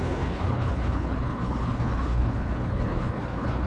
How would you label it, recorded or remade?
remade